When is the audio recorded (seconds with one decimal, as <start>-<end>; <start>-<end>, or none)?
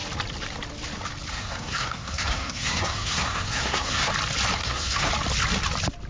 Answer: 0.0-1.3; 4.1-4.6; 5.1-6.1